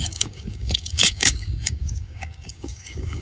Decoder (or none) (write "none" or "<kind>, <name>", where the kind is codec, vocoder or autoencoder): codec, DAC